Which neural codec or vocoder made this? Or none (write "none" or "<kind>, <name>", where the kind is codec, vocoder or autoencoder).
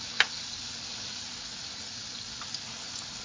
none